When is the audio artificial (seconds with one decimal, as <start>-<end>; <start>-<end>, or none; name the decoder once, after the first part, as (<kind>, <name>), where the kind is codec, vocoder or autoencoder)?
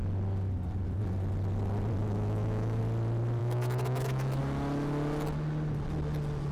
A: 2.0-2.8 (autoencoder, DAC-VAE); 3.4-4.4